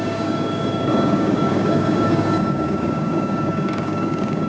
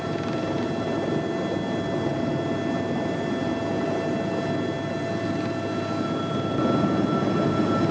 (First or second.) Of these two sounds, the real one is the second